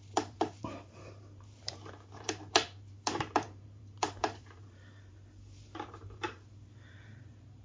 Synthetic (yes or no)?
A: yes